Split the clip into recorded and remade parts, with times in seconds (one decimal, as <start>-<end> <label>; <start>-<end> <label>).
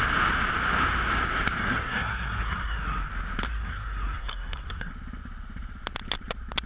0.0-1.6 recorded; 1.6-3.1 remade; 3.1-3.5 recorded; 3.5-4.9 remade; 4.9-6.7 recorded